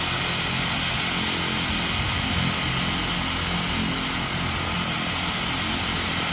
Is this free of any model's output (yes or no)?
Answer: yes